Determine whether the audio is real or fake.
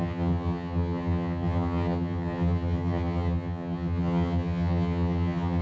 fake